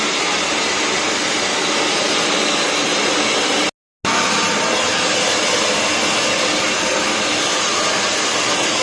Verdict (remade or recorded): recorded